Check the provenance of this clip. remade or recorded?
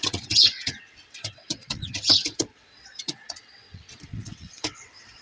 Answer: remade